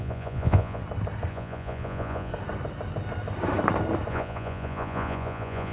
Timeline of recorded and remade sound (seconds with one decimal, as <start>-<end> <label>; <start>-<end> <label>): 0.0-0.8 remade; 0.8-1.3 recorded; 1.3-2.3 remade; 2.3-4.1 recorded; 4.1-5.7 remade